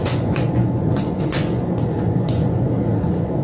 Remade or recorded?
remade